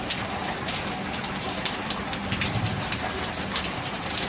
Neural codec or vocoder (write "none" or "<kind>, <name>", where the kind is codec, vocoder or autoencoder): none